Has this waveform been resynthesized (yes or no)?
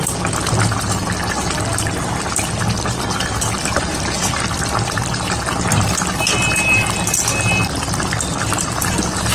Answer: no